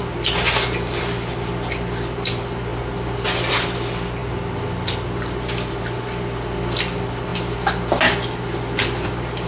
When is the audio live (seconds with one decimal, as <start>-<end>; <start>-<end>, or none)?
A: 0.0-9.5